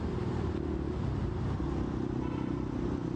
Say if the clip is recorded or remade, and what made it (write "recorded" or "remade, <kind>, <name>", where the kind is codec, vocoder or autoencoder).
recorded